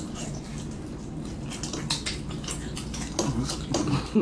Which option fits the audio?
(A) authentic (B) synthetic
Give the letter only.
A